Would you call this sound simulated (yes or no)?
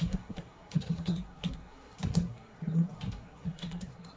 yes